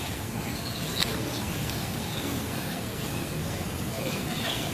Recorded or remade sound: remade